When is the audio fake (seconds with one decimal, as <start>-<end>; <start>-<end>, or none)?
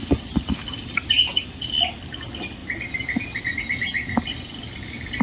none